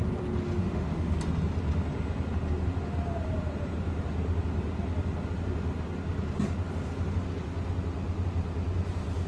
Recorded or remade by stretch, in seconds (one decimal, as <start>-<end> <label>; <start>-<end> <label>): 0.0-0.6 recorded; 0.6-1.2 remade; 1.2-9.3 recorded